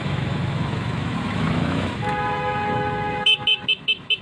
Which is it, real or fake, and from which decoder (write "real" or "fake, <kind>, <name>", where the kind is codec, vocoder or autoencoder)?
fake, autoencoder, DAC-VAE